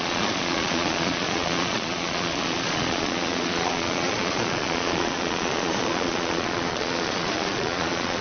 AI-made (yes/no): yes